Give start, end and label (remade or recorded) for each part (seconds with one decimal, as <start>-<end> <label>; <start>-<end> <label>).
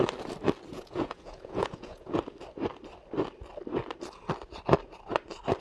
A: 0.0-0.7 recorded; 0.7-2.2 remade; 2.2-5.6 recorded